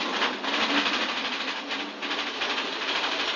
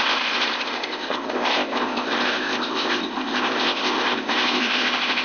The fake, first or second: second